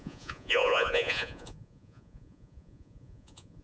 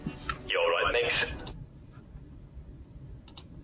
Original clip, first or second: second